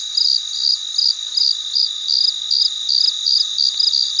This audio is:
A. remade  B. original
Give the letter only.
B